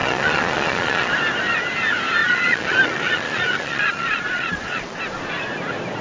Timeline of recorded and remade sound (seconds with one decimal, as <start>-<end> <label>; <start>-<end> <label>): 0.0-1.1 remade; 1.1-2.2 recorded; 2.2-5.0 remade; 5.0-6.0 recorded